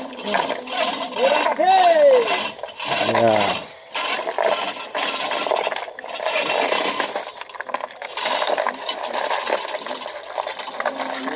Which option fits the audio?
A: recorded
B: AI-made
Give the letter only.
A